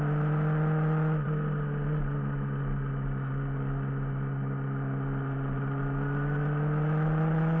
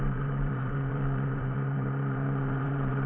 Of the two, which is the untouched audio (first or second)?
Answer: first